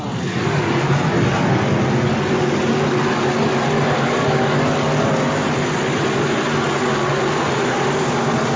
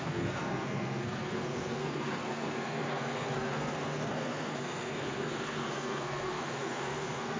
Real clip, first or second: first